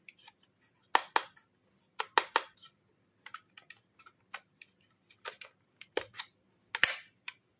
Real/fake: real